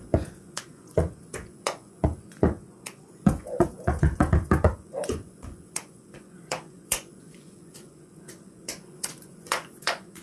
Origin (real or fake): fake